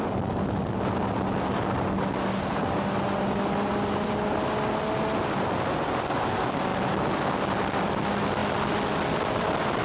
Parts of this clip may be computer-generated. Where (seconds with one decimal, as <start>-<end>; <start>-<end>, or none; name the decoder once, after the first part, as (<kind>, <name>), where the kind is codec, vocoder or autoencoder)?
none